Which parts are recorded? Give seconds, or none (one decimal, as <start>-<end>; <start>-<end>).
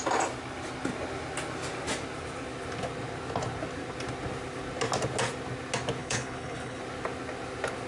0.0-6.0; 6.8-7.9